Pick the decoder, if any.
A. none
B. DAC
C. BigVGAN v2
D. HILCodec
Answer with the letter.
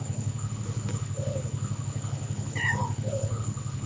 D